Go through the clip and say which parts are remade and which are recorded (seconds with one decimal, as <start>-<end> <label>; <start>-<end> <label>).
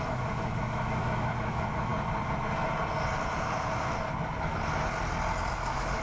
0.0-1.9 remade; 1.9-5.5 recorded; 5.5-6.0 remade